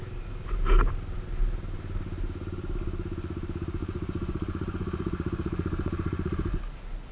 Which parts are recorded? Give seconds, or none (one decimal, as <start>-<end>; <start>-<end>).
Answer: 0.0-3.8; 6.6-7.1

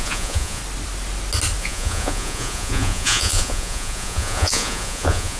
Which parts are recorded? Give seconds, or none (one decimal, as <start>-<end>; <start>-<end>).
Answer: 0.6-1.6